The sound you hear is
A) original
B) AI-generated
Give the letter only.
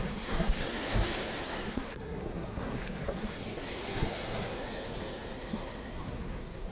B